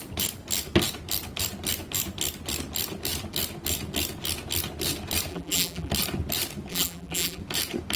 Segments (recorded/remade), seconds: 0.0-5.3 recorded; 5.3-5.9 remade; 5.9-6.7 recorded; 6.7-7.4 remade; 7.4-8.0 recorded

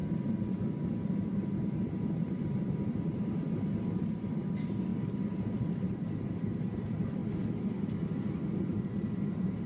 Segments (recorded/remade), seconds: 0.0-0.9 recorded; 0.9-7.2 remade; 7.2-8.6 recorded; 8.6-9.7 remade

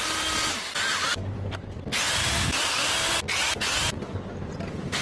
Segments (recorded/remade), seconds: 0.0-1.1 recorded; 1.1-3.1 remade; 3.1-5.0 recorded

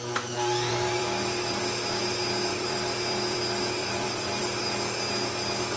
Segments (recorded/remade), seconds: 0.0-0.7 recorded; 0.7-2.0 remade; 2.0-2.5 recorded; 2.5-3.4 remade; 3.4-3.8 recorded; 3.8-4.6 remade; 4.6-5.8 recorded

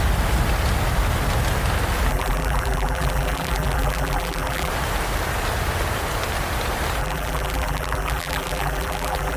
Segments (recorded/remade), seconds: 0.0-2.1 recorded; 2.1-4.7 remade; 4.7-7.0 recorded; 7.0-9.4 remade